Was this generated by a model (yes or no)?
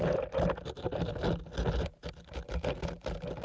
no